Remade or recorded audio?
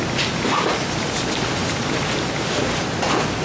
recorded